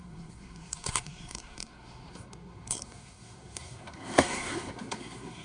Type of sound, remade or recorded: remade